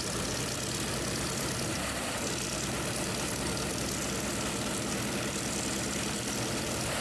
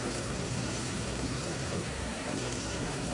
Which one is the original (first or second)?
first